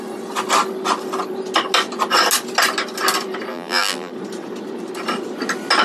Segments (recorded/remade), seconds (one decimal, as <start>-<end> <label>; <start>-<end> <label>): 0.0-3.5 recorded; 3.5-4.1 remade; 4.1-5.8 recorded